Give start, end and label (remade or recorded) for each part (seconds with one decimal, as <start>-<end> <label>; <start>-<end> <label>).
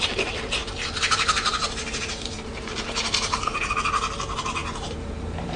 0.0-0.6 recorded; 0.6-3.7 remade; 3.7-4.6 recorded; 4.6-5.6 remade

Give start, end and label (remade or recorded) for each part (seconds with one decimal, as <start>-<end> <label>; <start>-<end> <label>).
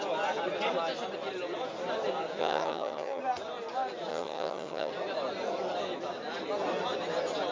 0.0-2.4 recorded; 2.4-3.2 remade; 3.2-4.1 recorded; 4.1-4.9 remade; 4.9-7.5 recorded